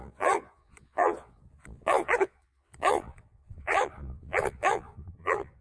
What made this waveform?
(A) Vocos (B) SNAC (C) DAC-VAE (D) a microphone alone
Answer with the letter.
A